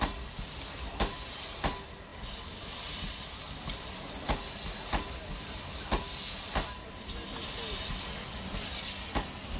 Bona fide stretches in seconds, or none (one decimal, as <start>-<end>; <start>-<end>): 0.0-9.6